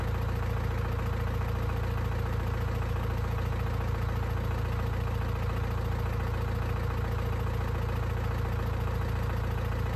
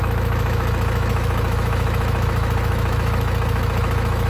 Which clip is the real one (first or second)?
first